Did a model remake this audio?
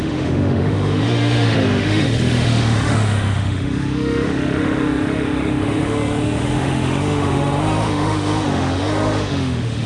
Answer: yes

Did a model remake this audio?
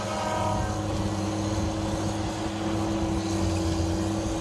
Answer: no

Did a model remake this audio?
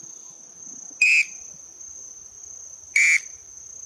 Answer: no